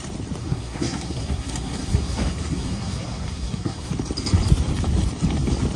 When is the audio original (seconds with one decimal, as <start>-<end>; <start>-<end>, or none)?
0.0-0.4; 3.9-5.8